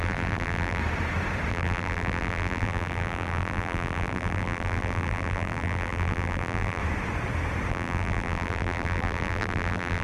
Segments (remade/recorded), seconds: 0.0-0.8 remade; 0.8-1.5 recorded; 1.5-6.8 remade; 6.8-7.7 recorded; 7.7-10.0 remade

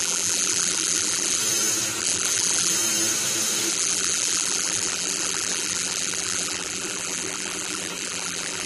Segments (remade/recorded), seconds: 0.0-1.4 remade; 1.4-2.0 recorded; 2.0-2.7 remade; 2.7-3.7 recorded; 3.7-8.7 remade

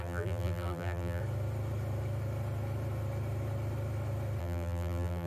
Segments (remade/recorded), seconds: 0.0-1.2 remade; 1.2-4.4 recorded; 4.4-5.3 remade

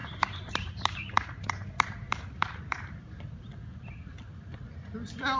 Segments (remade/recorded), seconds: 0.0-3.2 remade; 3.2-5.4 recorded

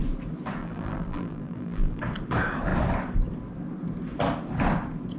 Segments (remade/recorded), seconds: 0.0-0.6 recorded; 0.6-2.0 remade; 2.0-5.2 recorded

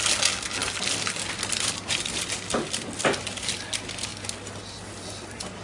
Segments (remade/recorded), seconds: 0.0-0.6 recorded; 0.6-3.0 remade; 3.0-5.6 recorded